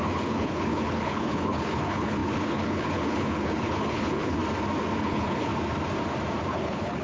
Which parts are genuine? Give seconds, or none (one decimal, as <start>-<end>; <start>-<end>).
4.4-5.0; 5.5-6.5